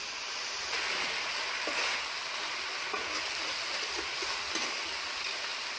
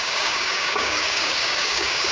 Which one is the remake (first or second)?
second